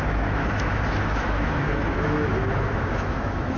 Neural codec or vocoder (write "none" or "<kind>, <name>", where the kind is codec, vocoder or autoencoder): autoencoder, DAC-VAE